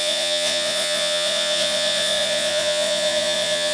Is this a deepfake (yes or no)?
yes